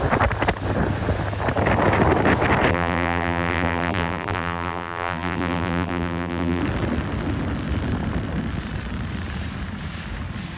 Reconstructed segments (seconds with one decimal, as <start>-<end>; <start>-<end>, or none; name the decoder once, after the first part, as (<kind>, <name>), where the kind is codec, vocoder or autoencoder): 2.7-6.6 (vocoder, BigVGAN v2)